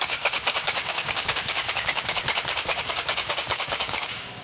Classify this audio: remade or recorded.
remade